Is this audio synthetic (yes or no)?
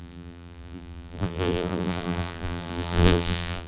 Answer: yes